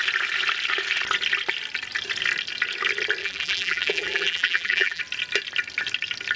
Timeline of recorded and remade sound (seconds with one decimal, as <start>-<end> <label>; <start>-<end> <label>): 0.0-3.2 recorded; 3.2-5.0 remade; 5.0-6.4 recorded